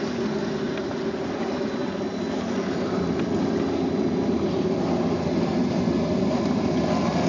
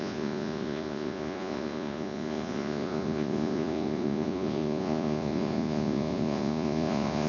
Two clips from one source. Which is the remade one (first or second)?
second